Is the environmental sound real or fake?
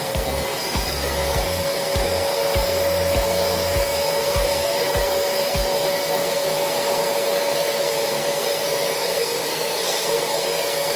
fake